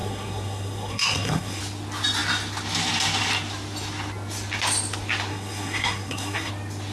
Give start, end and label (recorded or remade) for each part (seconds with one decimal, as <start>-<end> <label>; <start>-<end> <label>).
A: 0.0-1.6 remade; 1.6-5.3 recorded; 5.3-6.5 remade; 6.5-6.9 recorded